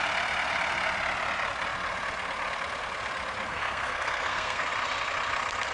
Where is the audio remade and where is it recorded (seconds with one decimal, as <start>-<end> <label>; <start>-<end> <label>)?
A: 0.0-3.5 recorded; 3.5-4.6 remade; 4.6-5.7 recorded

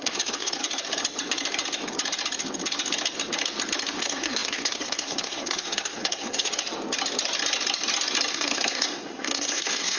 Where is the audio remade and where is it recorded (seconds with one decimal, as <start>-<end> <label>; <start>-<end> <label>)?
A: 0.0-0.6 remade; 0.6-4.0 recorded; 4.0-6.5 remade; 6.5-8.3 recorded; 8.3-10.0 remade

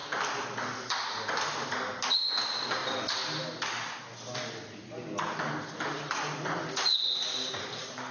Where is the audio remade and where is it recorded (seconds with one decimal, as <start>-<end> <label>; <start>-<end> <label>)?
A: 0.0-8.1 recorded

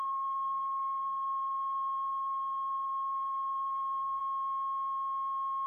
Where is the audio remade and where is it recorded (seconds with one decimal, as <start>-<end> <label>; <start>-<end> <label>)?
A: 0.0-4.2 remade; 4.2-5.7 recorded

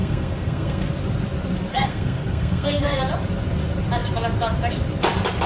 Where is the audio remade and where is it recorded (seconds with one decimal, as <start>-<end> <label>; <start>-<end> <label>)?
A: 0.0-0.9 remade; 0.9-1.7 recorded; 1.7-3.0 remade; 3.0-5.5 recorded